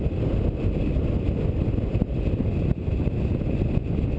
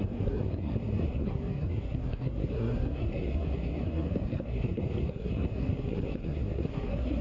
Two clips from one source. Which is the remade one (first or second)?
second